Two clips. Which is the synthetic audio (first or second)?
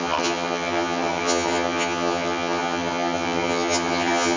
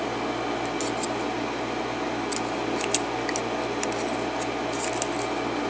first